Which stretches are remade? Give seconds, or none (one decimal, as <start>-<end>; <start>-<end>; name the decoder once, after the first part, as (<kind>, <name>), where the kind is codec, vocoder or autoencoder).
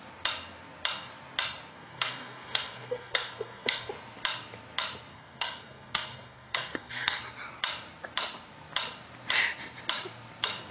1.7-3.9 (codec, SNAC); 5.1-7.2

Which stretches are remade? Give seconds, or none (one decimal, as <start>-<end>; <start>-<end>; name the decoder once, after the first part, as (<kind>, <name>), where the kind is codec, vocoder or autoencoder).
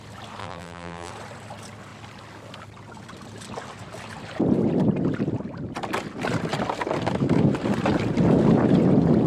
0.4-1.1 (vocoder, BigVGAN v2)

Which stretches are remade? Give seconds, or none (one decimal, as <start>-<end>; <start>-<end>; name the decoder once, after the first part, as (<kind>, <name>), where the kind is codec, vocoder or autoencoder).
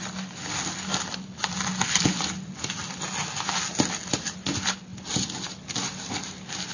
none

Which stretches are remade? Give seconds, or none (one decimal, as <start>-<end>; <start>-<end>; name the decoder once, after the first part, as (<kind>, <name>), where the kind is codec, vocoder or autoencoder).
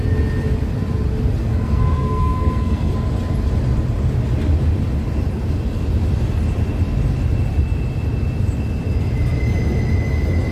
1.4-2.9 (codec, SNAC)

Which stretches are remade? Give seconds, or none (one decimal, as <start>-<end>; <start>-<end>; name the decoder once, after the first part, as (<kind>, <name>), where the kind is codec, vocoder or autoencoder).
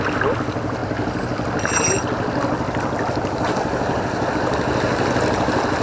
none